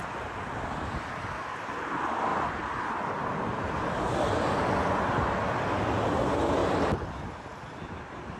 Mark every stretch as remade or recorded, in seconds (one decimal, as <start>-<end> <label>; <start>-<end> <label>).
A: 0.0-2.3 recorded; 2.3-5.1 remade; 5.1-6.6 recorded; 6.6-8.4 remade